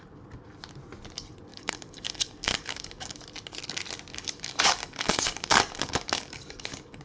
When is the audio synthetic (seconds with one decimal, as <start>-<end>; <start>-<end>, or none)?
1.5-3.2; 4.1-7.0